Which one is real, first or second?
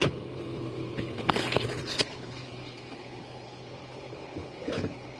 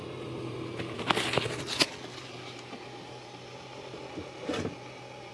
second